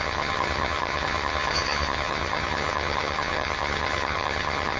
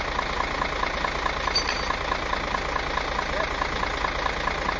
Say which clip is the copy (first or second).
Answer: first